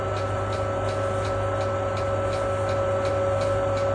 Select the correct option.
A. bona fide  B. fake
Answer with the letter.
A